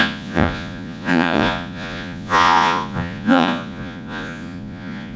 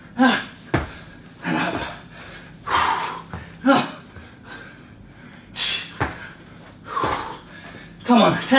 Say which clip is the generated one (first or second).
first